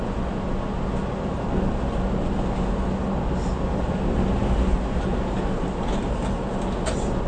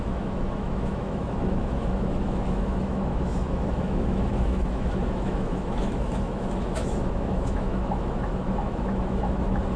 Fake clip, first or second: second